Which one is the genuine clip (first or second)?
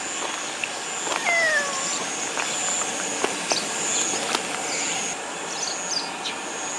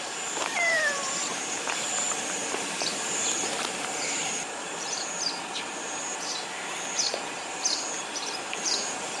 first